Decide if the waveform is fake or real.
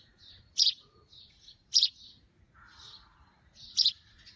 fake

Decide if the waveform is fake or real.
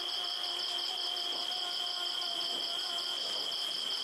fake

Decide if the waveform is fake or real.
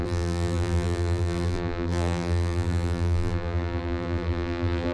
fake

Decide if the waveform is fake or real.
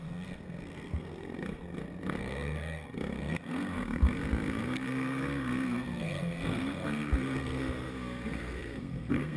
fake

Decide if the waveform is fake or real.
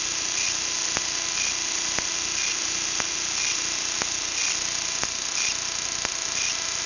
real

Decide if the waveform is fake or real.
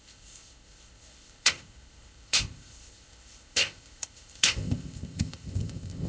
fake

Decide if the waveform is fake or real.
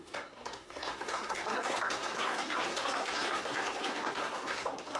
fake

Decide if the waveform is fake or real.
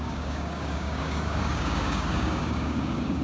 fake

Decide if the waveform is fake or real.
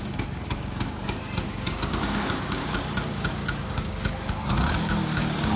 fake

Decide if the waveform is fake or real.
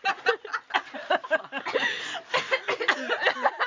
real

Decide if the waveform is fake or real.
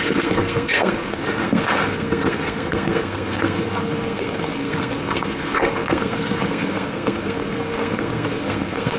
fake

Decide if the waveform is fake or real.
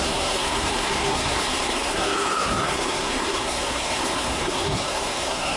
fake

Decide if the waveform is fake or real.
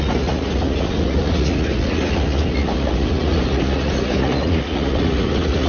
fake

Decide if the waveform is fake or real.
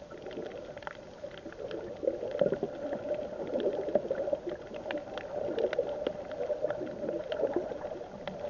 real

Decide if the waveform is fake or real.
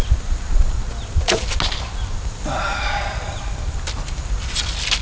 real